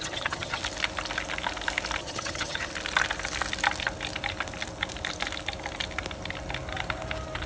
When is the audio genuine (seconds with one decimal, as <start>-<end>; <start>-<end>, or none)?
0.6-2.0; 2.7-7.5

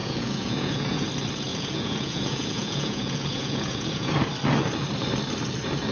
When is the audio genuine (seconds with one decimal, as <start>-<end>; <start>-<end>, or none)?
1.1-1.5; 4.1-5.9

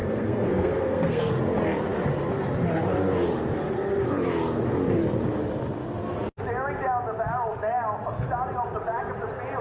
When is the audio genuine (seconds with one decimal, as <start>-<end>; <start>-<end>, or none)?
1.3-9.6

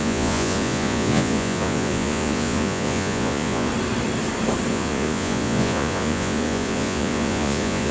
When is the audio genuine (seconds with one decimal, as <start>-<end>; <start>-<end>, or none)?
3.7-4.7